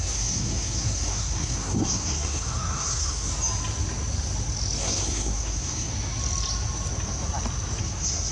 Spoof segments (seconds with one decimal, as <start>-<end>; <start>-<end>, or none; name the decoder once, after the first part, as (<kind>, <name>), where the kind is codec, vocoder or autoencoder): 0.0-3.3 (codec, SNAC); 4.8-5.9; 7.8-8.3